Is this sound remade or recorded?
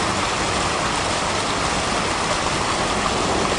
recorded